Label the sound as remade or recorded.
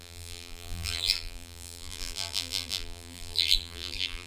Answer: remade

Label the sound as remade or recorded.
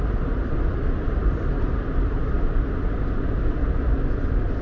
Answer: recorded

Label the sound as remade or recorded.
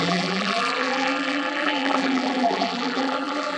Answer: remade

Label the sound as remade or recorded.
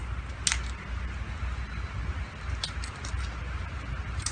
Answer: recorded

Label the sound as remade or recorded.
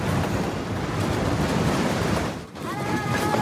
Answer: recorded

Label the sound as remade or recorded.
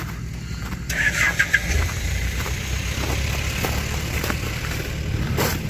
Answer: remade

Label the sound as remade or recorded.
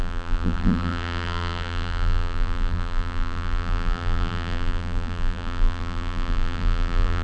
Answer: remade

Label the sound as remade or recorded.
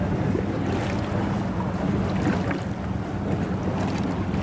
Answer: recorded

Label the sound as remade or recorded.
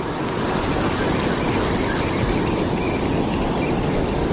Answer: recorded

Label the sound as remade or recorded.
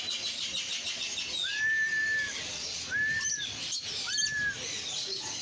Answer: recorded